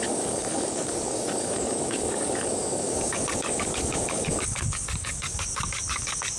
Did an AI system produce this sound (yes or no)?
yes